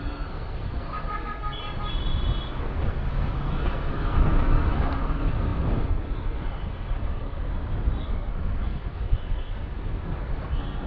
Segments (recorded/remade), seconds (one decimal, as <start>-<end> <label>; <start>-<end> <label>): 0.0-1.6 remade; 1.6-2.6 recorded; 2.6-7.5 remade; 7.5-8.0 recorded; 8.0-10.9 remade